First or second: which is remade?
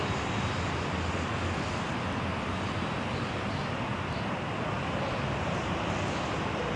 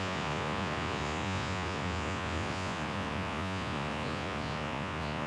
second